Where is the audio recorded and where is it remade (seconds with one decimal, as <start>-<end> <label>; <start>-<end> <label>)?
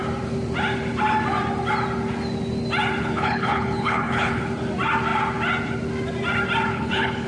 0.0-3.0 recorded; 3.0-4.4 remade; 4.4-6.7 recorded; 6.7-7.3 remade